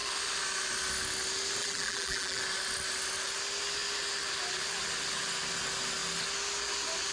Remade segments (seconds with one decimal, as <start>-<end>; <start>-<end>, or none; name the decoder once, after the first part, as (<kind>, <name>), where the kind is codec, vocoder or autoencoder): 1.6-2.4 (vocoder, BigVGAN v2)